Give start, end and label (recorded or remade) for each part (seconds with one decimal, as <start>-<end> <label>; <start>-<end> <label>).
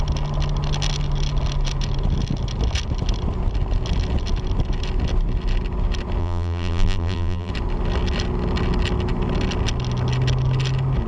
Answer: 0.0-6.2 recorded; 6.2-7.5 remade; 7.5-11.1 recorded